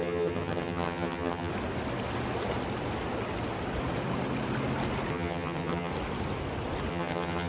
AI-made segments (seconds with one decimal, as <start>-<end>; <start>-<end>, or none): 0.0-1.5; 5.1-5.9; 6.9-7.5